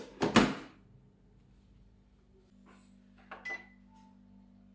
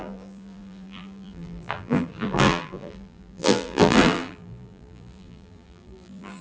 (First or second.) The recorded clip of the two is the first